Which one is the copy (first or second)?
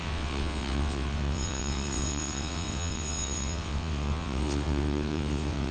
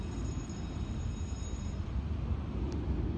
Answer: first